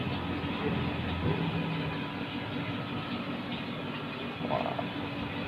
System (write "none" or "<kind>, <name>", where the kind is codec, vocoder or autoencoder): none